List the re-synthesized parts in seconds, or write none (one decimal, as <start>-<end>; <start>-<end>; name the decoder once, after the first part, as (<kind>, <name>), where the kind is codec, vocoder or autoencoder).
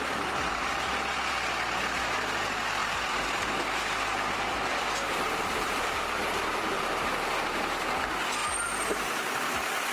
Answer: 2.8-6.9 (vocoder, BigVGAN v2); 8.4-9.3